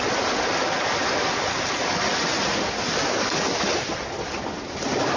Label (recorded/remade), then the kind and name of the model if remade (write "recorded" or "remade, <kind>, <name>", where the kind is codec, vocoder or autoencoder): recorded